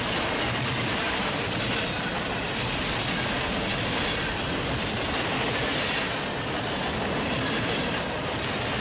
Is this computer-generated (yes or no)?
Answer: no